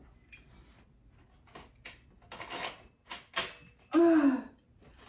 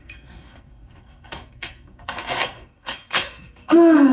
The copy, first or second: second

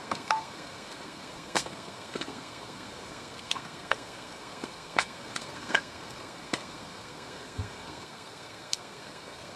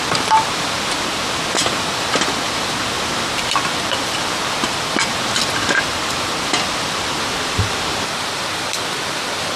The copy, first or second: first